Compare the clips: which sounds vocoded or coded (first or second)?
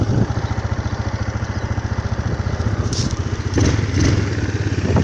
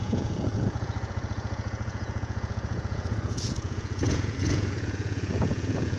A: second